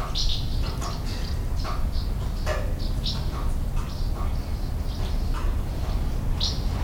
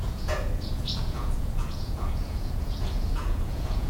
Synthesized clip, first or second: second